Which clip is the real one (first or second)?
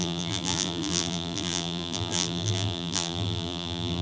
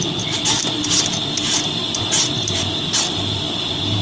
second